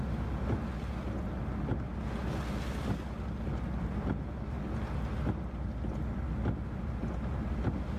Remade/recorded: recorded